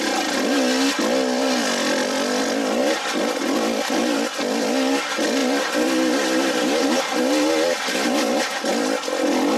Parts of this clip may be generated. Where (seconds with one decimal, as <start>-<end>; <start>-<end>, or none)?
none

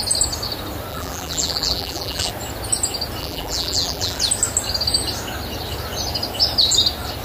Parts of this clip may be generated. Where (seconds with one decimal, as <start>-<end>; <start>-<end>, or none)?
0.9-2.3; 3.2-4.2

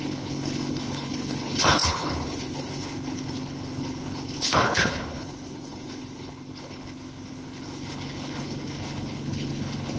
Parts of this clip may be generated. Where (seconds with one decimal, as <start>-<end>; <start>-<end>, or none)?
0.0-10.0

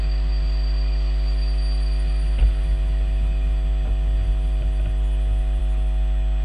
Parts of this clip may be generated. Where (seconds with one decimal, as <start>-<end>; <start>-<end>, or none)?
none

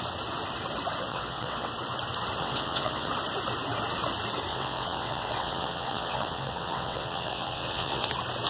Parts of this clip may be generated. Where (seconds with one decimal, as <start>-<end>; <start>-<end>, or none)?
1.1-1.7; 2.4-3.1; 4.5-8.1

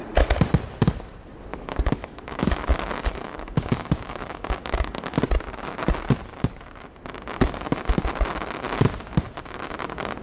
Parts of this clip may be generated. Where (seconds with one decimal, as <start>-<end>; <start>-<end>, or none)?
1.5-5.2

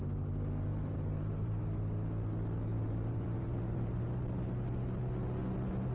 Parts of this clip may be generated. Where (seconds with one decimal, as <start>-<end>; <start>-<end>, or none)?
0.7-1.6; 2.7-4.2